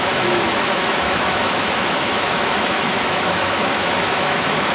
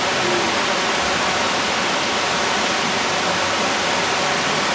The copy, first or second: first